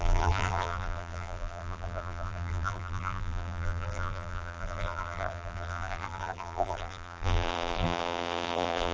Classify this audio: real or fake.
fake